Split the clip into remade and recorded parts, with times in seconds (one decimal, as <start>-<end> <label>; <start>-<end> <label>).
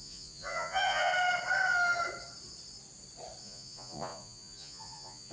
0.0-1.1 remade; 1.1-3.4 recorded; 3.4-5.3 remade